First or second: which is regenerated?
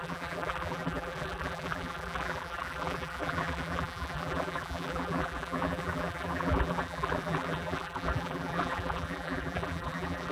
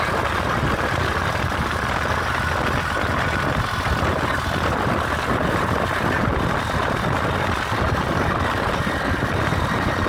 first